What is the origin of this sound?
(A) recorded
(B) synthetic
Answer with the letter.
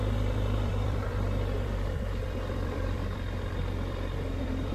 B